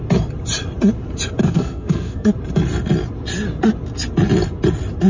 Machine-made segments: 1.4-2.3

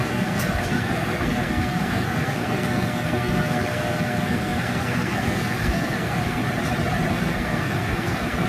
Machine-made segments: 0.0-6.4; 7.1-8.5

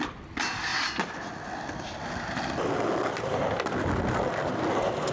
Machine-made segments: none